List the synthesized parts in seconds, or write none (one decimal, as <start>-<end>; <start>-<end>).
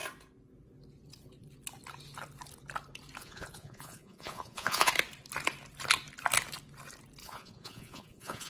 3.2-4.9; 7.2-8.5